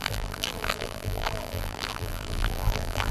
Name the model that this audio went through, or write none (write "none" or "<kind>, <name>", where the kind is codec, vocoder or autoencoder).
vocoder, BigVGAN v2